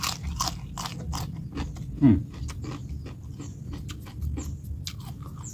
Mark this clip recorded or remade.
recorded